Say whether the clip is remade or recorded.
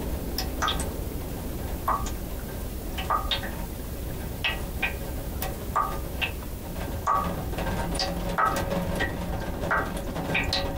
recorded